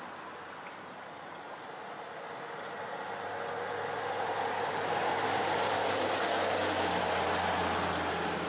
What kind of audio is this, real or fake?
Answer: real